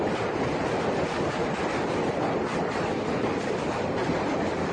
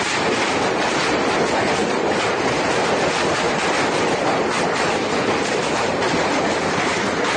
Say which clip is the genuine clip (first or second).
second